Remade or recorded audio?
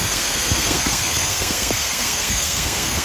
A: remade